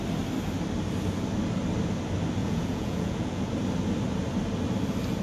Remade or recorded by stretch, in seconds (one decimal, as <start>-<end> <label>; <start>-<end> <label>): 0.0-2.4 recorded; 2.4-3.4 remade; 3.4-5.2 recorded